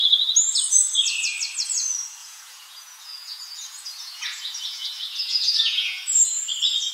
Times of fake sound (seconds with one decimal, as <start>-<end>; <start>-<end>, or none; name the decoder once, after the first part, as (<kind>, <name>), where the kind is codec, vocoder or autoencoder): 2.2-6.2 (vocoder, Vocos)